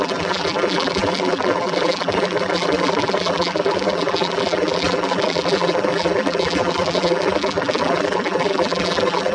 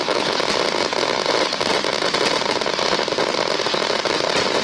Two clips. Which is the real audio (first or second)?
second